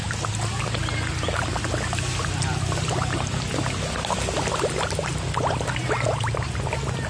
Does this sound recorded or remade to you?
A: recorded